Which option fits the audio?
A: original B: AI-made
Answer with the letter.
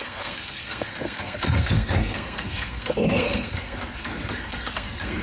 B